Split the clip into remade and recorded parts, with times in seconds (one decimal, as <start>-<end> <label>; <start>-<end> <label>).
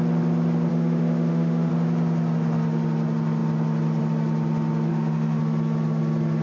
0.0-0.7 recorded; 0.7-1.7 remade; 1.7-4.9 recorded; 4.9-5.4 remade; 5.4-6.4 recorded